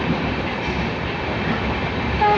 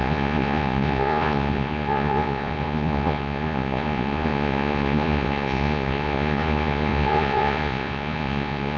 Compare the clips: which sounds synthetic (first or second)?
second